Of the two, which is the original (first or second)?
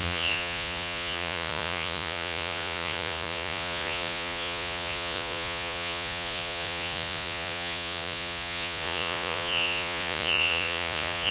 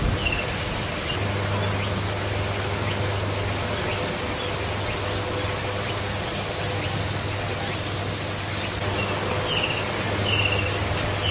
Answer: second